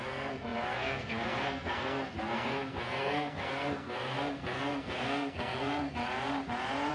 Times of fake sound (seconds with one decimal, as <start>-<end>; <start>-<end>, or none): 0.0-6.0